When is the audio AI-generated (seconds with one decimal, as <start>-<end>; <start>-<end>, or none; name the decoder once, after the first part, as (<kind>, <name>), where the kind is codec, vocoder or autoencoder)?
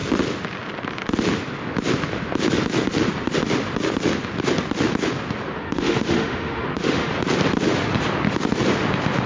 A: 5.6-7.1 (autoencoder, DAC-VAE)